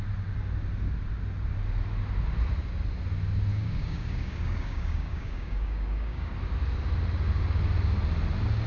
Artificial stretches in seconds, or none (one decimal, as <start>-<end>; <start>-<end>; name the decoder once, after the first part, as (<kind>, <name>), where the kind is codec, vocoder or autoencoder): 3.5-6.3 (codec, DAC)

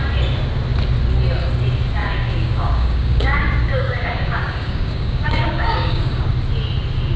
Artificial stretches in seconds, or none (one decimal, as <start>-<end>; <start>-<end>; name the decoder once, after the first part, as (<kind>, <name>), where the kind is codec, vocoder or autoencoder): 2.0-6.3 (codec, DAC)